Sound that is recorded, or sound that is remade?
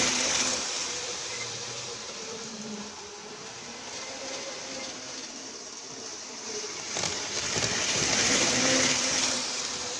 remade